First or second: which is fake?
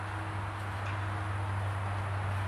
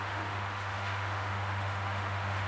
second